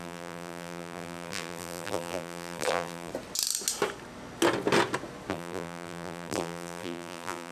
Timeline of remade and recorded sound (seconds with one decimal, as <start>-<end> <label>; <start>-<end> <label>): 0.0-3.1 remade; 3.1-5.3 recorded; 5.3-7.5 remade